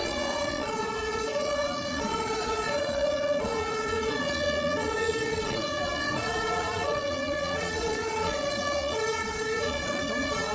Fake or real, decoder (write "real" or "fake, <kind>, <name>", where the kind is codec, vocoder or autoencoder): fake, vocoder, Vocos